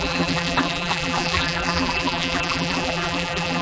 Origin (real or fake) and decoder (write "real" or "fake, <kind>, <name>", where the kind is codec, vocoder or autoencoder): fake, vocoder, BigVGAN v2